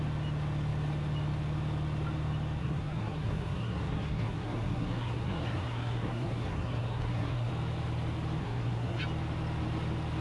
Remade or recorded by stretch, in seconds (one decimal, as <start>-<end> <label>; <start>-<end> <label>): 0.0-2.6 recorded; 2.6-7.5 remade; 7.5-8.4 recorded; 8.4-9.0 remade; 9.0-10.2 recorded